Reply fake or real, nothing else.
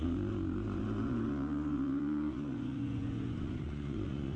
fake